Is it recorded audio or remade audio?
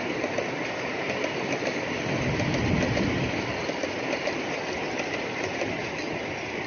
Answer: recorded